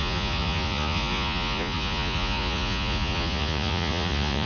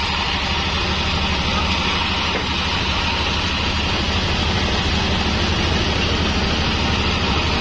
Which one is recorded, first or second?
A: second